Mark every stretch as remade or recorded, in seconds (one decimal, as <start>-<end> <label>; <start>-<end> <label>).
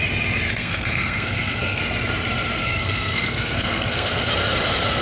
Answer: 0.0-0.6 recorded; 0.6-1.8 remade; 1.8-2.6 recorded; 2.6-4.3 remade; 4.3-5.0 recorded